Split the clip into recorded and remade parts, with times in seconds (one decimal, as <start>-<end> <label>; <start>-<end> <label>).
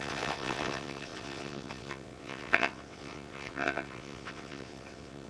0.0-5.3 remade